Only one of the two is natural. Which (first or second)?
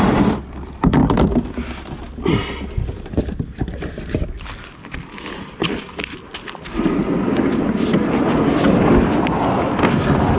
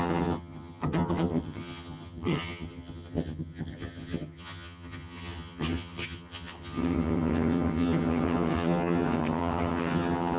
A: first